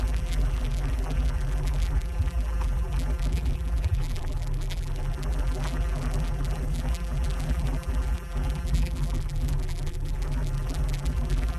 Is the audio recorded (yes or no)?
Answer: no